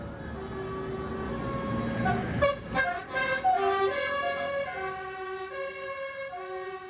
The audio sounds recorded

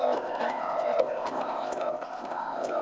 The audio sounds remade